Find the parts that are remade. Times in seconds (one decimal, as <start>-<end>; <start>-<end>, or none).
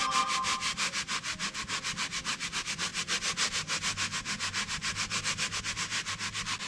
none